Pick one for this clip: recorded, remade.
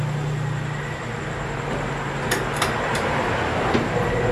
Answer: recorded